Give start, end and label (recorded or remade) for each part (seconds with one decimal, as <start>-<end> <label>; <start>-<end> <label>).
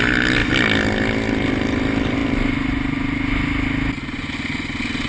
0.0-5.1 recorded